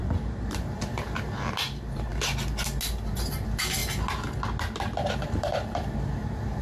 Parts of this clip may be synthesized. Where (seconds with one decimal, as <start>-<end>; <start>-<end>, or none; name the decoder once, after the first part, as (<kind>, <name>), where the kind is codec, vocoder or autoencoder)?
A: 0.0-2.1 (vocoder, BigVGAN v2); 2.9-3.8; 5.1-6.6